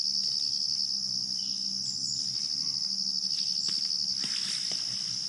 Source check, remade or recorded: recorded